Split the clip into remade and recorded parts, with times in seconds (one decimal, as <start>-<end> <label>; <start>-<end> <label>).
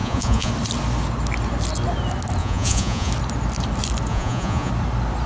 0.0-0.5 remade; 0.5-2.4 recorded; 2.4-3.1 remade; 3.1-4.1 recorded; 4.1-4.7 remade; 4.7-5.3 recorded